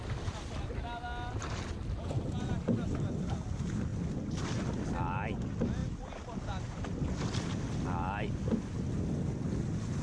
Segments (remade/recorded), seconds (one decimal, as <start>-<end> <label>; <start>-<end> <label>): 0.0-5.8 recorded; 5.8-7.1 remade; 7.1-10.0 recorded